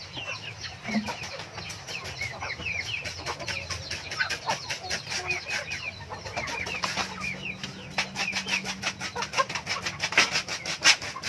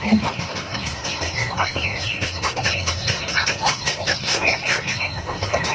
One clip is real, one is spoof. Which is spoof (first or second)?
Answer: second